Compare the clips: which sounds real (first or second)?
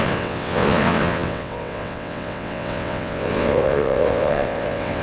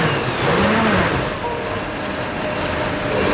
second